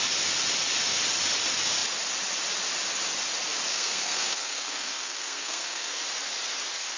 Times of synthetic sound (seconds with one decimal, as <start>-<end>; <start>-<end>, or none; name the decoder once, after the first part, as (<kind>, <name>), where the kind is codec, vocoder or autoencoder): 3.7-6.0 (codec, SNAC)